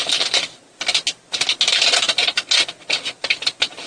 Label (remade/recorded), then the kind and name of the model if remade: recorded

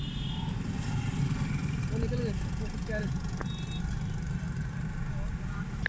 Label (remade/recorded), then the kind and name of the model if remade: recorded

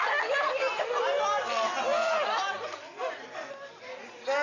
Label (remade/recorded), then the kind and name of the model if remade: recorded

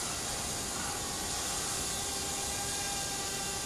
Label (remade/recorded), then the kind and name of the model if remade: recorded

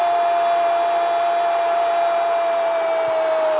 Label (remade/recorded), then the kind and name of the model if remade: recorded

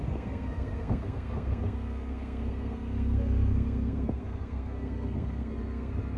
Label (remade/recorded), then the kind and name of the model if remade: remade, codec, SNAC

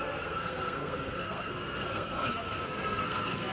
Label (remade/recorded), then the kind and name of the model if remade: remade, codec, SNAC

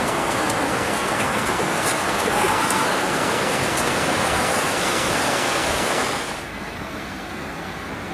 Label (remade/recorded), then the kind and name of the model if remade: remade, codec, SNAC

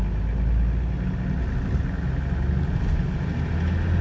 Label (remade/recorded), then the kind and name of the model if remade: recorded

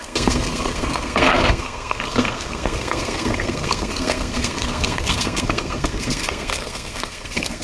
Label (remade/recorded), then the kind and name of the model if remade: remade, codec, SNAC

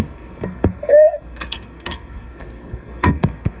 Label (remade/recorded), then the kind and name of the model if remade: remade, codec, SNAC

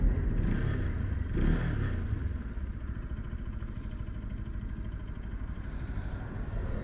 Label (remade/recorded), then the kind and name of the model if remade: recorded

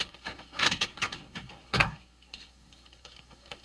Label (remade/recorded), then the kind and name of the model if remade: remade, codec, SNAC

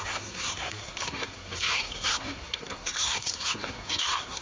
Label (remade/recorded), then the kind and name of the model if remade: remade, codec, SNAC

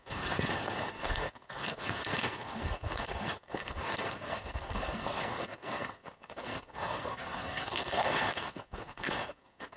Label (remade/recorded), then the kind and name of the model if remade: remade, codec, SNAC